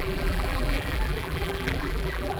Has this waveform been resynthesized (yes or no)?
yes